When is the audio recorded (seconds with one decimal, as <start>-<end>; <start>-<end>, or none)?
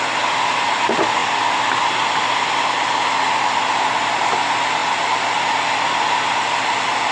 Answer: 0.0-7.1